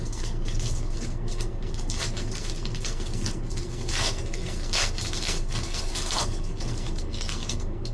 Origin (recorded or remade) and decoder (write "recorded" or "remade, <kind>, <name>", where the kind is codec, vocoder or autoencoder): remade, codec, SNAC